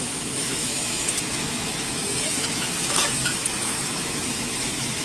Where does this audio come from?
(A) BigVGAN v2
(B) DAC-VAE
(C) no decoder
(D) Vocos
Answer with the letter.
B